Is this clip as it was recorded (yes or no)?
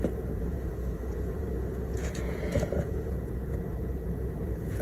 no